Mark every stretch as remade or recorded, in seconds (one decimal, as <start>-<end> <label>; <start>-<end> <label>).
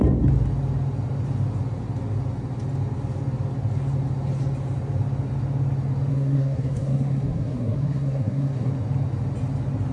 0.0-6.1 recorded; 6.1-8.7 remade; 8.7-9.9 recorded